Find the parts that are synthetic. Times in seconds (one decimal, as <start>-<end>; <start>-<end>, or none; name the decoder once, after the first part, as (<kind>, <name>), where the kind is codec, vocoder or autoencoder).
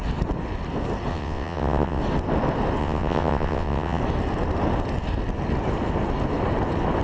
1.1-2.0 (vocoder, WaveNeXt); 2.8-4.0